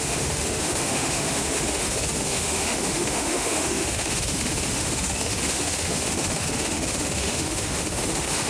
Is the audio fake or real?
fake